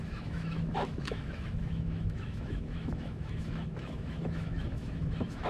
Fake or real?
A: fake